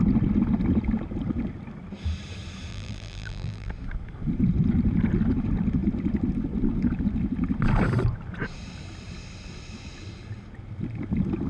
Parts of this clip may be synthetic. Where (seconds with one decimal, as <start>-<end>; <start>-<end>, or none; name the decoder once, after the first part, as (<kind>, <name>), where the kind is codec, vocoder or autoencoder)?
2.7-3.7 (vocoder, BigVGAN v2)